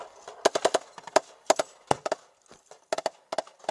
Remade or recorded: recorded